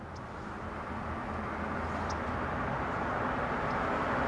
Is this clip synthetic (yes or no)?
no